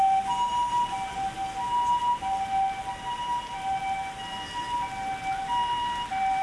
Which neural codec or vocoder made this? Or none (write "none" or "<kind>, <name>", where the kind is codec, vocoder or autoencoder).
none